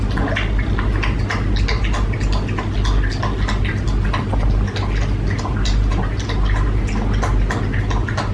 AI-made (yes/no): no